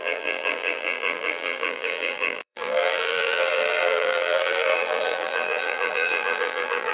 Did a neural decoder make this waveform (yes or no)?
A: yes